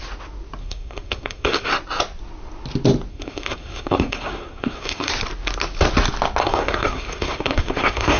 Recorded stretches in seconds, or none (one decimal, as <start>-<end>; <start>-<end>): 0.0-0.6; 1.7-3.1; 5.1-6.4